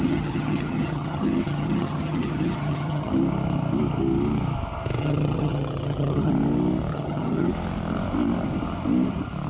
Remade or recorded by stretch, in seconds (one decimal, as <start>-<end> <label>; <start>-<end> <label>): 0.0-3.1 remade; 3.1-5.0 recorded; 5.0-6.3 remade; 6.3-6.9 recorded; 6.9-7.5 remade; 7.5-9.5 recorded